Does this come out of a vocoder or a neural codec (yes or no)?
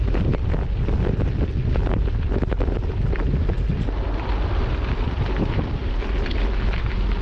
no